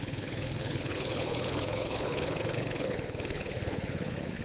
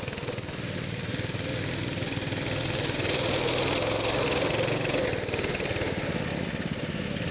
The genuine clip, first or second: second